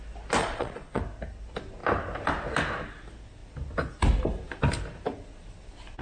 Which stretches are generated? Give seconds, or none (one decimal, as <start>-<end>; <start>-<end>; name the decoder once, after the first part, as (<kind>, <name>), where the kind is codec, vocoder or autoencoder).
0.4-1.0 (vocoder, Vocos)